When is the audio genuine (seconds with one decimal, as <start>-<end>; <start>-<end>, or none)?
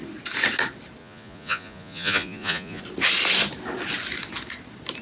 0.0-1.0; 2.8-5.0